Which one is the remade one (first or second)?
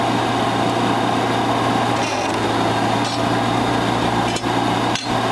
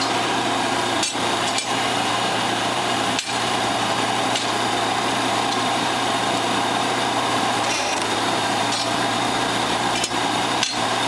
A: second